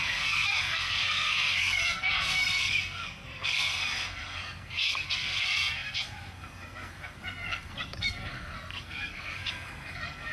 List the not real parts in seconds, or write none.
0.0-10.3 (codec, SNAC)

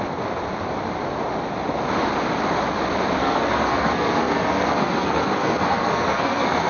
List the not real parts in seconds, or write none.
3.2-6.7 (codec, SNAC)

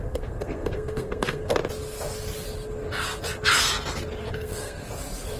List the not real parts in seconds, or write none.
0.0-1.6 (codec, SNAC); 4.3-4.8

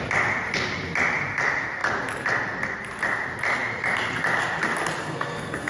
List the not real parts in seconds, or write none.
5.0-5.7 (codec, SNAC)

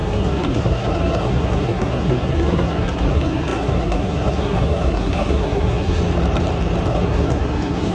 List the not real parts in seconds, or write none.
0.0-6.0 (codec, SNAC); 6.9-7.9